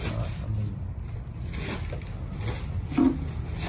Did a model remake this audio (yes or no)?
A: no